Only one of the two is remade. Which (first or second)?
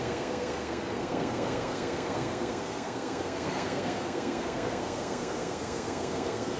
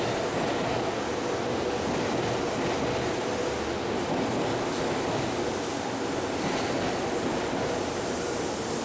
first